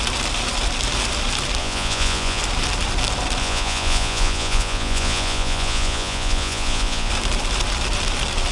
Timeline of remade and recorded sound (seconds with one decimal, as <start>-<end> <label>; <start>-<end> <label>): 0.0-1.6 recorded; 1.6-2.4 remade; 2.4-3.4 recorded; 3.4-7.1 remade; 7.1-8.5 recorded